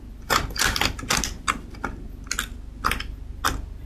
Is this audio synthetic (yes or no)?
no